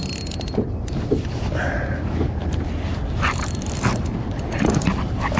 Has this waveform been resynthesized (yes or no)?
no